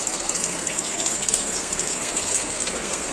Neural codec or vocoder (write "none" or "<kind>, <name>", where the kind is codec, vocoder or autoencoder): codec, SNAC